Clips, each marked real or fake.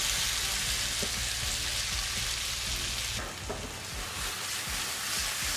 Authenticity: real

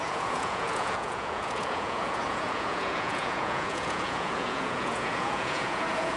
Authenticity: fake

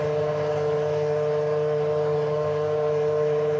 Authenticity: real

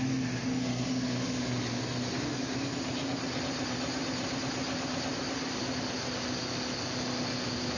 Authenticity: real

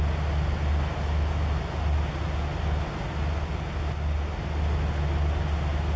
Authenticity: real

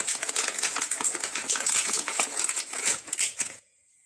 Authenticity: fake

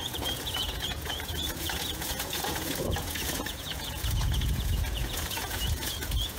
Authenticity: fake